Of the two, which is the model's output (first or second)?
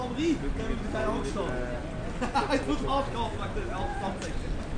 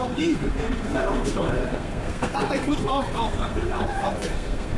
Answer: second